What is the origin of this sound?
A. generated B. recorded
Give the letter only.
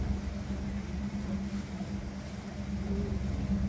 B